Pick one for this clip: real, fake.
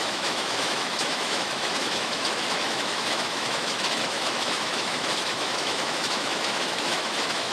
fake